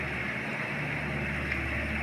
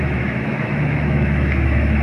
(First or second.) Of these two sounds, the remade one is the second